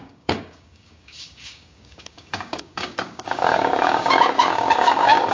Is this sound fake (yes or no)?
yes